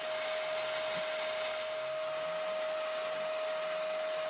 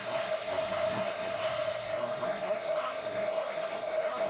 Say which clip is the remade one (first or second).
second